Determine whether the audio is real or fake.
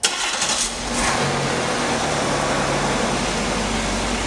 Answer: real